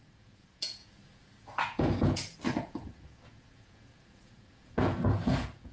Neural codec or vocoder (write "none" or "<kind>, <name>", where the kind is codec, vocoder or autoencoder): vocoder, Vocos